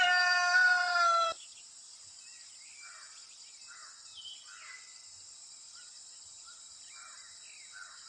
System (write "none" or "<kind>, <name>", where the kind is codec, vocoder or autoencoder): none